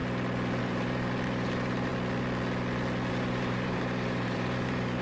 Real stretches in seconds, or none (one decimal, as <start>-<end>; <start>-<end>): 0.0-0.6; 1.9-3.1